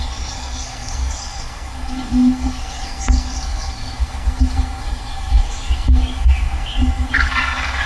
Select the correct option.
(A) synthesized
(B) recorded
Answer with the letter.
A